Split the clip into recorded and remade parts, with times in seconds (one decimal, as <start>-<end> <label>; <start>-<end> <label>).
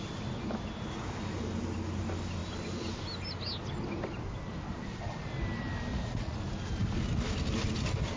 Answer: 0.0-5.9 recorded; 5.9-6.4 remade; 6.4-8.2 recorded